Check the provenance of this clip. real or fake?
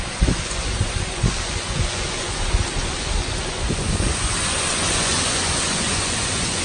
fake